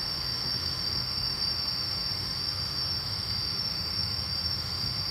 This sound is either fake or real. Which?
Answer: fake